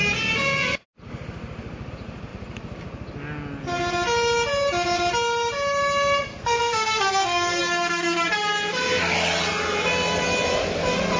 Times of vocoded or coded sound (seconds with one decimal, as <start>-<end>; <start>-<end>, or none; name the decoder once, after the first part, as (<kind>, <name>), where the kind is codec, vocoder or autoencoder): 6.3-7.6 (codec, SNAC)